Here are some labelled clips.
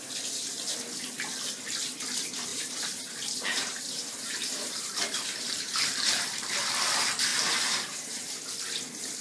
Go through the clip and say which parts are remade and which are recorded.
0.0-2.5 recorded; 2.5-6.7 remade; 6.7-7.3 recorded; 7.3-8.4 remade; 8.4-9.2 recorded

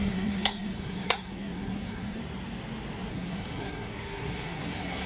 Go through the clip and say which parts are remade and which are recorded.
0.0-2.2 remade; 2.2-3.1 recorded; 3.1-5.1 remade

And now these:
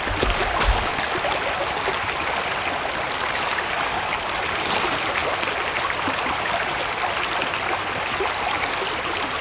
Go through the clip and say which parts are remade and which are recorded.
0.0-9.4 recorded